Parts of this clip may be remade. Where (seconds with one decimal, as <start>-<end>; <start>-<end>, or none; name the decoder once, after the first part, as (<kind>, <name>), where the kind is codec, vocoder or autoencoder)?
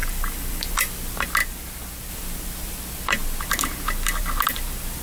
0.0-0.9 (vocoder, BigVGAN v2)